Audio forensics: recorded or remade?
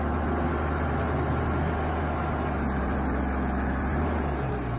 recorded